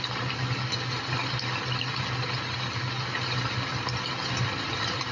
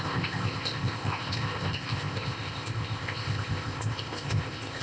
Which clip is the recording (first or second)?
first